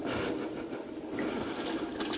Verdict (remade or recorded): recorded